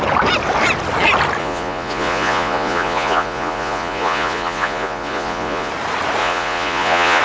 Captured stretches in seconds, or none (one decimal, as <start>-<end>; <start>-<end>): 0.0-1.4; 5.7-6.2